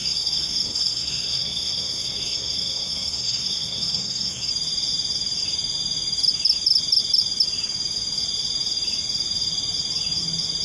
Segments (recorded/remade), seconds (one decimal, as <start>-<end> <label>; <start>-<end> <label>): 0.0-4.5 remade; 4.5-10.6 recorded